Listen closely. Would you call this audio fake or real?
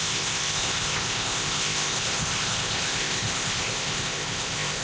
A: fake